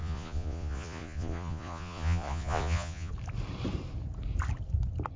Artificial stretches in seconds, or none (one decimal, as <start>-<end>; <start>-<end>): 0.0-3.1